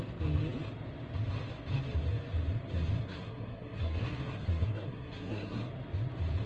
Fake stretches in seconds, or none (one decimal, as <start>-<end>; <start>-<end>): 3.0-5.7